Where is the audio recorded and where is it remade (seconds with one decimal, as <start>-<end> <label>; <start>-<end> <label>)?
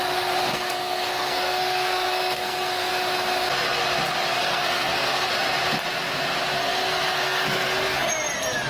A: 0.0-0.5 recorded; 0.5-2.9 remade; 2.9-4.4 recorded; 4.4-5.3 remade; 5.3-6.6 recorded; 6.6-8.1 remade; 8.1-8.7 recorded